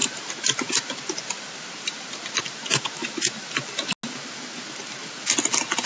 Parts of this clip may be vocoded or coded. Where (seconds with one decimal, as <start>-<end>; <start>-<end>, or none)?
none